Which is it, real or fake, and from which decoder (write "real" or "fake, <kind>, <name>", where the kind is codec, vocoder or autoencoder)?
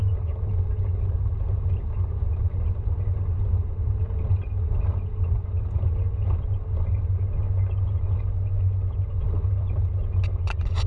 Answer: real